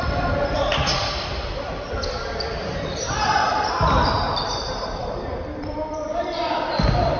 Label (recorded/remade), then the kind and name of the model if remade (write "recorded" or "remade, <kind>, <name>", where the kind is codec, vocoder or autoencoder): remade, vocoder, BigVGAN v2